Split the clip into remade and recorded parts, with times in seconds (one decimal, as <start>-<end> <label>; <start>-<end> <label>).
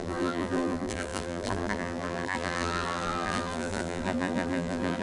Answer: 0.0-5.0 remade